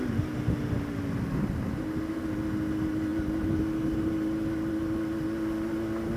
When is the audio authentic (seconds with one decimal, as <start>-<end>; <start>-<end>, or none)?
0.0-6.2